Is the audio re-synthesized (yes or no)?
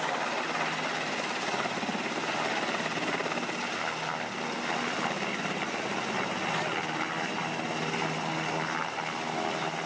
no